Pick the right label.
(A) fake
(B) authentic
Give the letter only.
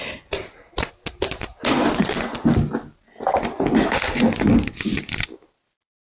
B